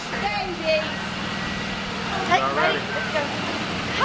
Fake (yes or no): no